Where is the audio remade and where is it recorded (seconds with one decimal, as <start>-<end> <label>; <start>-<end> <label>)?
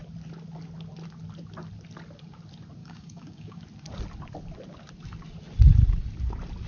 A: 0.0-2.8 recorded; 2.8-3.6 remade; 3.6-6.7 recorded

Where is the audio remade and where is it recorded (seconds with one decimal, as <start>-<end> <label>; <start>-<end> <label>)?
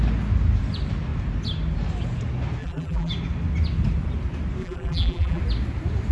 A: 0.0-2.6 recorded; 2.6-3.1 remade; 3.1-4.6 recorded; 4.6-5.4 remade; 5.4-6.1 recorded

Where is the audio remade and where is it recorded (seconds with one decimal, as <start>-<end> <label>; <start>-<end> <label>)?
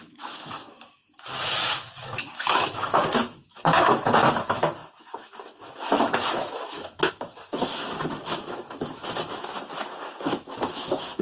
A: 0.0-11.2 remade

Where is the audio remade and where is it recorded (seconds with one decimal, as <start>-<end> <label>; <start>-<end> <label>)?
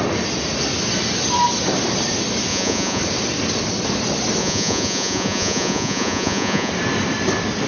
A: 0.0-2.5 recorded; 2.5-3.0 remade; 3.0-4.4 recorded; 4.4-6.7 remade; 6.7-7.7 recorded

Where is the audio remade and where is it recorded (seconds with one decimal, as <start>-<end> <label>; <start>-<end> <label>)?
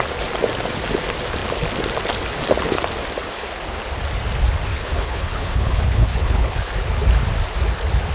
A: 0.0-4.7 recorded; 4.7-6.7 remade; 6.7-8.1 recorded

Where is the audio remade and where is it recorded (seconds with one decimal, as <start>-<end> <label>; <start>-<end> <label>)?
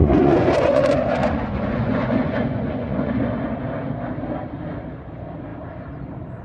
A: 0.0-3.1 remade; 3.1-6.4 recorded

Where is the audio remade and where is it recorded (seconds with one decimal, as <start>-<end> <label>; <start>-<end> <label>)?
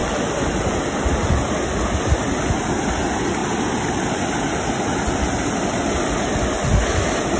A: 0.0-7.4 recorded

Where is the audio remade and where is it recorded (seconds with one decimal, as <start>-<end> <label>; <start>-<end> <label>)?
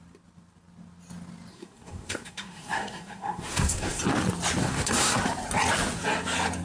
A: 0.0-1.5 recorded; 1.5-4.0 remade; 4.0-4.6 recorded; 4.6-5.2 remade; 5.2-6.6 recorded